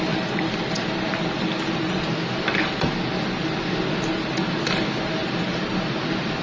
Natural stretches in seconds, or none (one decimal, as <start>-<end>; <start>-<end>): 0.0-5.2